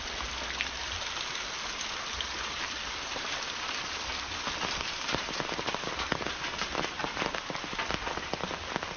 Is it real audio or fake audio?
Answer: real